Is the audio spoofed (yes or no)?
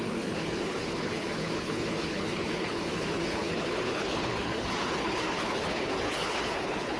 yes